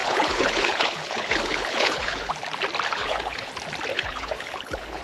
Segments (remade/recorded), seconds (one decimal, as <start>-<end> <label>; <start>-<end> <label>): 0.0-2.3 remade; 2.3-2.9 recorded; 2.9-3.5 remade; 3.5-3.9 recorded; 3.9-5.0 remade